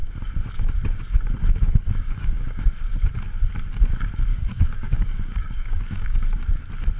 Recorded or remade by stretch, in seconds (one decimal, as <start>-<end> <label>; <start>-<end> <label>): 0.0-2.0 recorded; 2.0-2.7 remade; 2.7-4.3 recorded; 4.3-6.2 remade; 6.2-7.0 recorded